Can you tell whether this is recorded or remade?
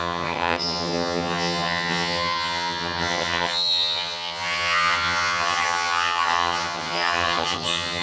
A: remade